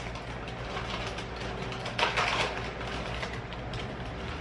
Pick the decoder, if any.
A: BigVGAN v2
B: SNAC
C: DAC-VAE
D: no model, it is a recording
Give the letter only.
D